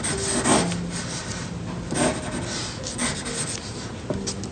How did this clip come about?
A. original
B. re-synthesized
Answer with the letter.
A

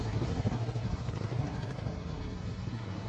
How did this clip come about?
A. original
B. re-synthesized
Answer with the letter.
B